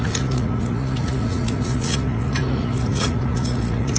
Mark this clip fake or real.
fake